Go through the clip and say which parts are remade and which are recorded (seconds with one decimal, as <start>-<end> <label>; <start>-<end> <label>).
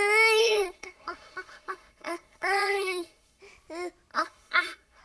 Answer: 0.0-0.4 recorded; 0.4-3.4 remade; 3.4-4.1 recorded; 4.1-5.0 remade